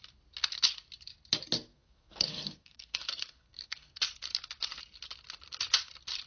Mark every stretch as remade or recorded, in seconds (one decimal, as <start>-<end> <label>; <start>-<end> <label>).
0.0-1.7 recorded; 1.7-4.0 remade; 4.0-6.3 recorded